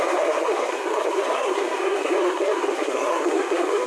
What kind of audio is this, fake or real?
fake